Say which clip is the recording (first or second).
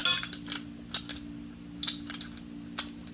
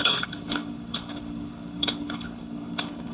first